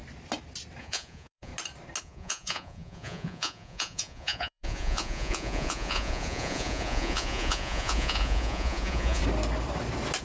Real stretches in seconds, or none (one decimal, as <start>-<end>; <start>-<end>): 0.0-0.8; 1.5-2.0; 9.2-10.2